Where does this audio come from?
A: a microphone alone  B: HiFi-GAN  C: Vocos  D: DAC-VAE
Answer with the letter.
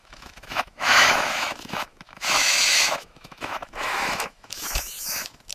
D